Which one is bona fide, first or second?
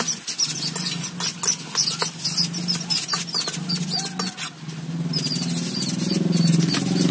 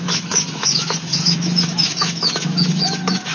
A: first